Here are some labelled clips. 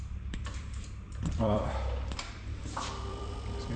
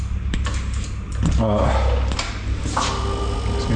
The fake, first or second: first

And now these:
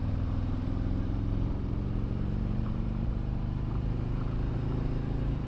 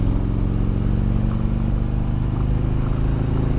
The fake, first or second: first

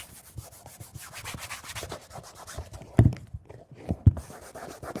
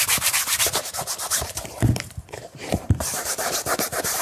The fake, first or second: second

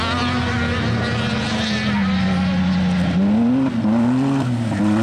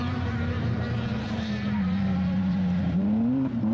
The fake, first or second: second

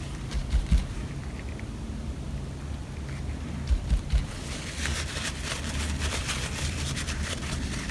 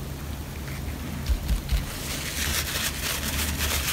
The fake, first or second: first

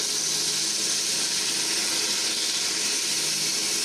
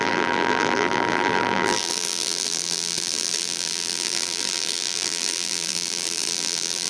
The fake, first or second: second